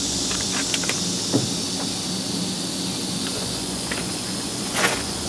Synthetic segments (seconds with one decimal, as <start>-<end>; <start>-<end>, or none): 0.0-0.6; 3.0-5.3